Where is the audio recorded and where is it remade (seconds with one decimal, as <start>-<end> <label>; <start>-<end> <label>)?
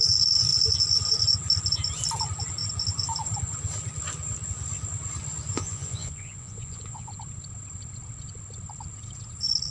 0.0-5.5 recorded; 5.5-7.1 remade; 7.1-9.7 recorded